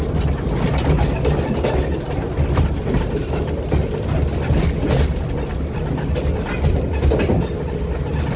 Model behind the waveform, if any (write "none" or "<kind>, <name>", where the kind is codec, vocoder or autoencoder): none